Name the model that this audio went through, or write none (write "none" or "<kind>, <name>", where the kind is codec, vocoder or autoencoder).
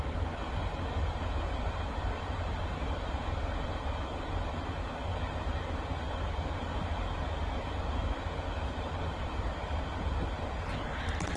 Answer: none